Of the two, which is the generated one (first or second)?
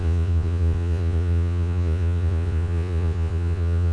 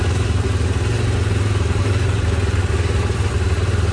first